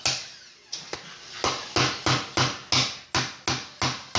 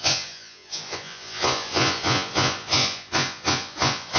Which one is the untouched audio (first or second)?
first